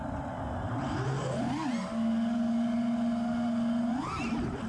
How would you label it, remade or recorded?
recorded